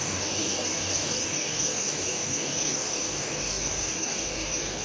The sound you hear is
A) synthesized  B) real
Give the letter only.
A